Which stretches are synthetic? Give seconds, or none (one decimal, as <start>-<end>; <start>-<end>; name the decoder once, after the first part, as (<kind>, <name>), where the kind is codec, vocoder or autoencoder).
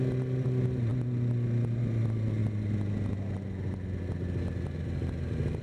none